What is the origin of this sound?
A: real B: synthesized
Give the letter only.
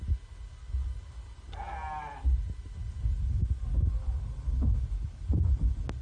A